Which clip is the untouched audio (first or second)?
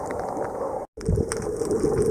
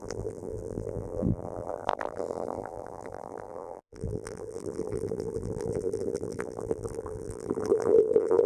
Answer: first